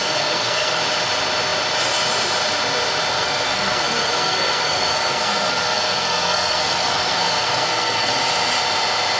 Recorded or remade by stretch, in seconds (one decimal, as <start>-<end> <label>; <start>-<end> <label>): 0.0-0.8 remade; 0.8-3.1 recorded; 3.1-8.1 remade; 8.1-9.2 recorded